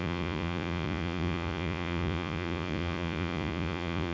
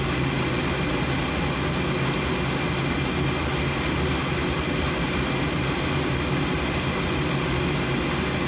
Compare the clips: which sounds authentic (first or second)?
second